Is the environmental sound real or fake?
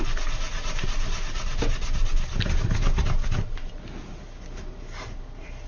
real